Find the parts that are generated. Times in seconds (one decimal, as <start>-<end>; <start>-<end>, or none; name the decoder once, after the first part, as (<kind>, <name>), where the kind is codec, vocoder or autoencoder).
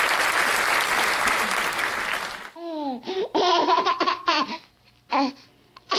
3.3-4.7 (vocoder, BigVGAN v2)